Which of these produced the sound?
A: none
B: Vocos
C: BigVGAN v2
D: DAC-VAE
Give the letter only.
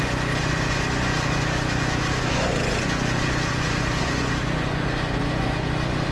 B